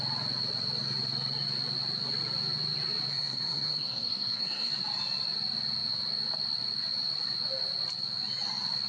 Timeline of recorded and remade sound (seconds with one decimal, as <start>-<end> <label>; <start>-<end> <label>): 0.0-3.1 recorded; 3.1-4.7 remade; 4.7-8.9 recorded